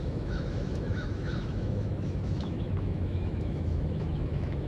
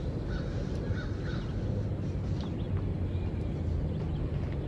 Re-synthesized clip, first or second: first